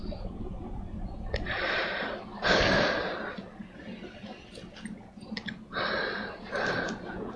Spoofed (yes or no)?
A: no